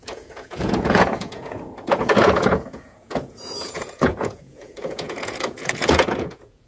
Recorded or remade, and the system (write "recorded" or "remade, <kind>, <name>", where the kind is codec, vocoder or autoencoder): remade, vocoder, Vocos